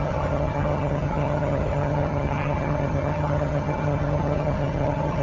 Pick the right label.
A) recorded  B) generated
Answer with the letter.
B